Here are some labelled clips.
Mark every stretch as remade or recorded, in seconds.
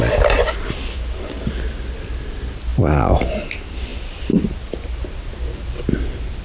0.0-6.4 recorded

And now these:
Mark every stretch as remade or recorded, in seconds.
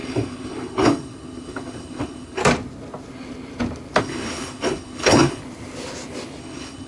0.0-2.4 remade; 2.4-4.0 recorded; 4.0-5.4 remade; 5.4-6.4 recorded; 6.4-6.9 remade